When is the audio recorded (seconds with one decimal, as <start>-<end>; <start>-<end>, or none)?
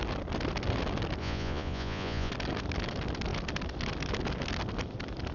0.0-1.2; 2.3-5.3